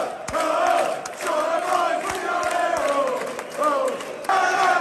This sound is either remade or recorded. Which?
recorded